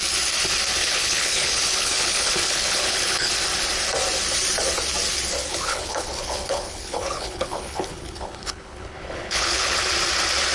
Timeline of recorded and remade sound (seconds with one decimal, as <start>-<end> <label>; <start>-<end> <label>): 0.0-0.8 recorded; 0.8-3.3 remade; 3.3-5.5 recorded; 5.5-9.9 remade; 9.9-10.5 recorded